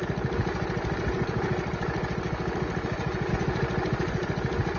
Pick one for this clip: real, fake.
real